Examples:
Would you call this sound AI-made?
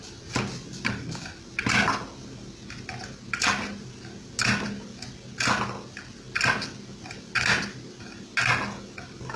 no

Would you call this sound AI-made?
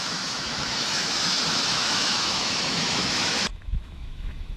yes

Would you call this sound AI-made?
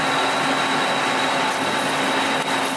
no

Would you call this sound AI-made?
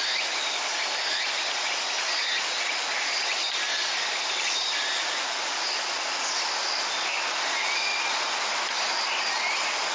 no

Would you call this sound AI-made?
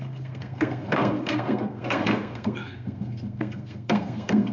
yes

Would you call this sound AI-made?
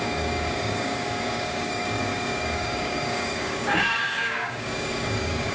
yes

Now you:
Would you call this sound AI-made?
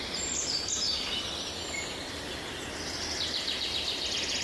yes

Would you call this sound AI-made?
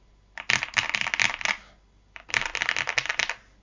no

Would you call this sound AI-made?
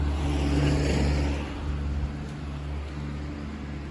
no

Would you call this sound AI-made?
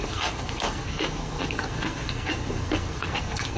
yes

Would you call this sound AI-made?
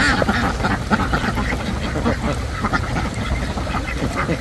no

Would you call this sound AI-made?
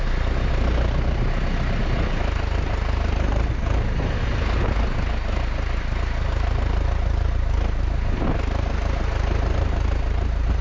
no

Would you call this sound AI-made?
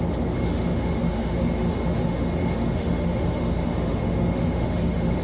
yes